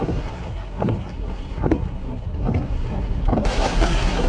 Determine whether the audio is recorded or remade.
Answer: remade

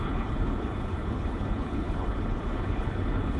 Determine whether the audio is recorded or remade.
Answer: remade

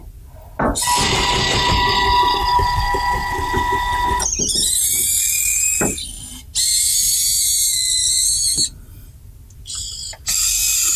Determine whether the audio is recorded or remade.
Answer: recorded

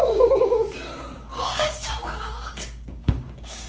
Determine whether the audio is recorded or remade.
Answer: remade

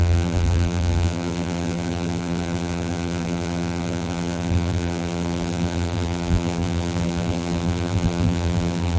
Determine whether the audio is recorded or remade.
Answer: remade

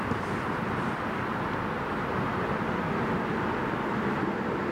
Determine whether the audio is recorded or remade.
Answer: recorded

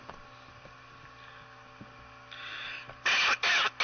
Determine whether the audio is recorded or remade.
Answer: recorded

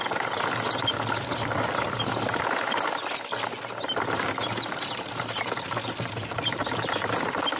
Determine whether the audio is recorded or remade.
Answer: recorded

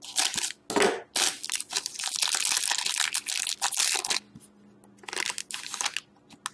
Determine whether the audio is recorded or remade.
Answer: recorded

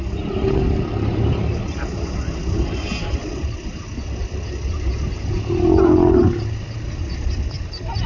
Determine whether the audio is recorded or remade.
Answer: recorded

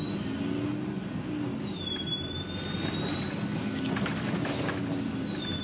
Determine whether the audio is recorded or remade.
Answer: recorded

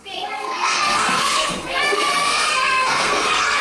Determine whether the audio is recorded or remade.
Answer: remade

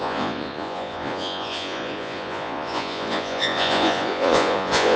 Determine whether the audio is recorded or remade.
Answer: remade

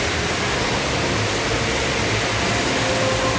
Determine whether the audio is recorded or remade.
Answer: recorded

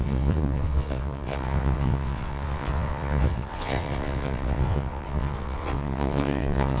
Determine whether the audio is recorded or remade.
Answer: remade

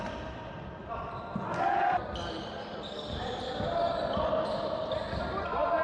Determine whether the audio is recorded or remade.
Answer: recorded